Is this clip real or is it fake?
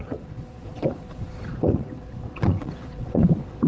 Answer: fake